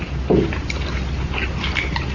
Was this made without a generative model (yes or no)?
yes